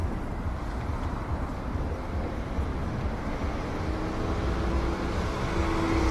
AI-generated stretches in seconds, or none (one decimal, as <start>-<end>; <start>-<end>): 0.0-1.8; 2.7-3.3